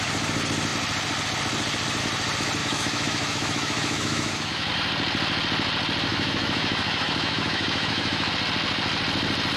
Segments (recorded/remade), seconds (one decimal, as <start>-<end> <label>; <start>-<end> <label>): 0.0-2.6 recorded; 2.6-4.7 remade; 4.7-6.1 recorded; 6.1-8.3 remade; 8.3-9.6 recorded